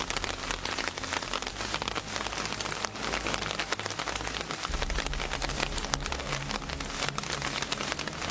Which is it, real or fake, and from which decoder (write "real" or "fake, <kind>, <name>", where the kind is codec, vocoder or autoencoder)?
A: real